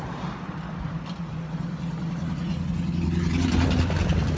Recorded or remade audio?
recorded